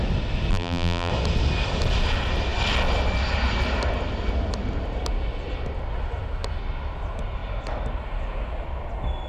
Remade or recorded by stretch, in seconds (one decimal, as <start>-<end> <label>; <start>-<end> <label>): 0.0-0.5 recorded; 0.5-1.1 remade; 1.1-9.3 recorded